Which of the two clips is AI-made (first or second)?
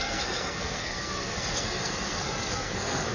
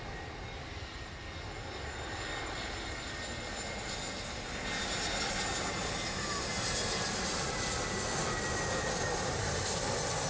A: first